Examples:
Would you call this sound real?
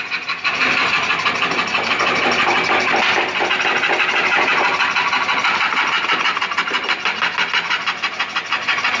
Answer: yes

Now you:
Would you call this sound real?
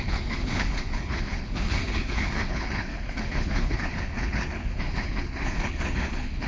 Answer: no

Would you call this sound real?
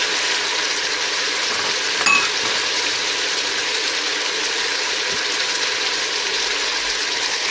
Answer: yes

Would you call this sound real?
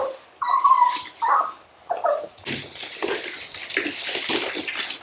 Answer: yes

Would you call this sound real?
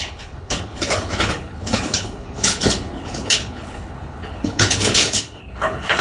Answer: no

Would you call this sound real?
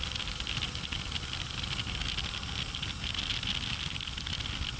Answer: yes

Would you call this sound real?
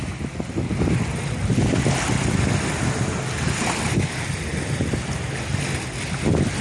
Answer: yes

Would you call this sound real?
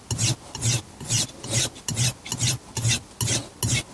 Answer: yes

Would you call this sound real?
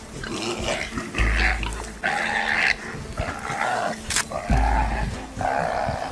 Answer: yes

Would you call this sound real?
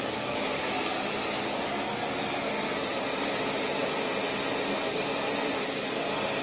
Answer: yes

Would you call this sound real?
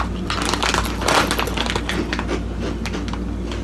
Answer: yes